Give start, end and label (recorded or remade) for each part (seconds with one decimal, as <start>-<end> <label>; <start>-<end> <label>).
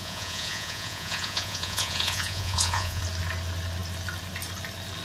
0.0-3.0 remade; 3.0-5.0 recorded